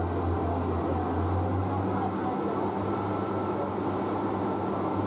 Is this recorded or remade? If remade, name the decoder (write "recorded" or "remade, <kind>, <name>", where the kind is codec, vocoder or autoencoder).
recorded